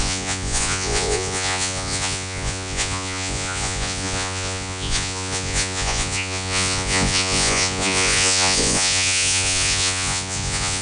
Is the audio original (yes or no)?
no